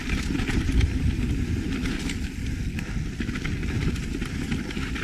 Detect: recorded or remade recorded